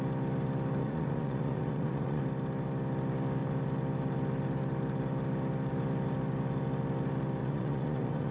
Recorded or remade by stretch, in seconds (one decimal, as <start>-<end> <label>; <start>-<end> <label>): 0.0-0.8 recorded; 0.8-2.2 remade; 2.2-7.4 recorded; 7.4-8.3 remade